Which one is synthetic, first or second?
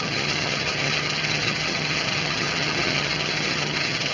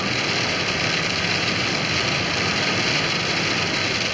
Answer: first